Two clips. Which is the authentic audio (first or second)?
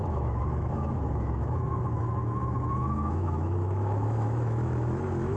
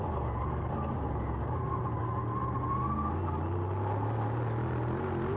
second